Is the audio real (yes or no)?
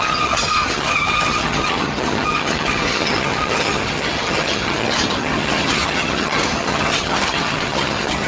no